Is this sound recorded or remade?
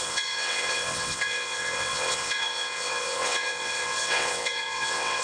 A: remade